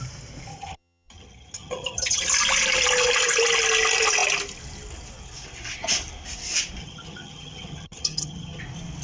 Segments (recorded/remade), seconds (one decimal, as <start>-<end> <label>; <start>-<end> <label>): 0.0-0.5 recorded; 0.5-2.2 remade; 2.2-6.8 recorded; 6.8-8.6 remade; 8.6-9.0 recorded